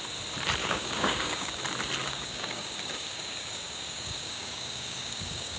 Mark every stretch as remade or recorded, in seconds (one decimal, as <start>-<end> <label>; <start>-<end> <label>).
0.0-0.6 recorded; 0.6-1.6 remade; 1.6-2.0 recorded; 2.0-5.6 remade